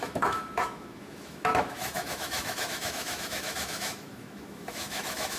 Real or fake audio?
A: fake